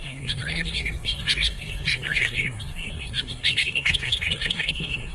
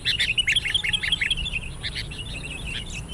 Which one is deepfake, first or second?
first